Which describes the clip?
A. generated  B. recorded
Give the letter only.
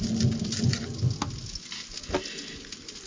B